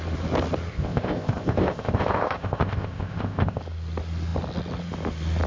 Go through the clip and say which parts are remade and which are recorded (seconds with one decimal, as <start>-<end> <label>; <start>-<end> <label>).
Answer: 0.0-0.7 recorded; 0.7-3.6 remade; 3.6-5.5 recorded